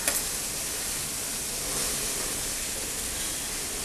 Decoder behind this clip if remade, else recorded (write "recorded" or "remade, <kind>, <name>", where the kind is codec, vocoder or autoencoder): recorded